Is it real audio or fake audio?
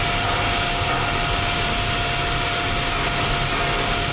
real